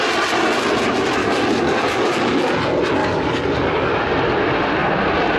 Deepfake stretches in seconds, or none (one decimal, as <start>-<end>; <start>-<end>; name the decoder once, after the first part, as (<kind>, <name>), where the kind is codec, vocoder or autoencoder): 1.2-2.4 (codec, DAC); 3.0-3.9